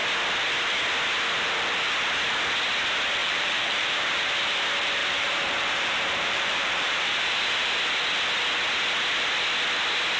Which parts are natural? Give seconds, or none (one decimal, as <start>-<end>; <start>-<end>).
0.0-3.2; 4.3-5.0; 7.7-10.2